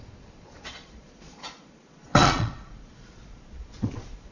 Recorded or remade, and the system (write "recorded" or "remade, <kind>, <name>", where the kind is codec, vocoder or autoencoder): remade, vocoder, Vocos